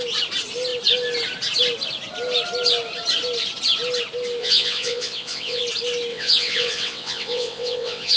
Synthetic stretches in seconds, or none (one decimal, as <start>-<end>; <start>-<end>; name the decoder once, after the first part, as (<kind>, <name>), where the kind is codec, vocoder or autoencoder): 4.4-5.6 (vocoder, WaveNeXt); 6.1-8.2

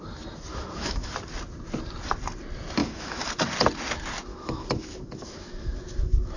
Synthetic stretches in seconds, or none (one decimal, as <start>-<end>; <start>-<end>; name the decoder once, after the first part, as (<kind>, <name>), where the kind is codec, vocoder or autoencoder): 0.5-1.1 (autoencoder, DAC-VAE); 2.8-3.3; 4.3-6.4

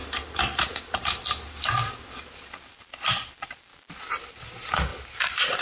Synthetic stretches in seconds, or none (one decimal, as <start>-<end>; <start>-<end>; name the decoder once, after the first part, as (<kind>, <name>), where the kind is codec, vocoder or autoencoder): 0.0-3.7 (vocoder, BigVGAN v2); 4.3-5.6

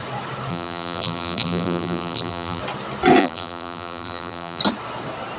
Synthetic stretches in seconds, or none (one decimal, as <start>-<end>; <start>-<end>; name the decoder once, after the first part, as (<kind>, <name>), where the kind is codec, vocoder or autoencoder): 0.5-2.6 (vocoder, BigVGAN v2); 3.2-4.6